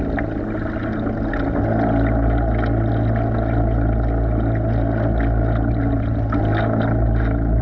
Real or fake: real